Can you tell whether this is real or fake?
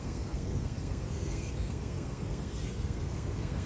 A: fake